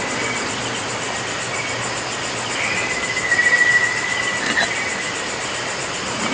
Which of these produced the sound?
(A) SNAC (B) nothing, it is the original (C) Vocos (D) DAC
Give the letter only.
B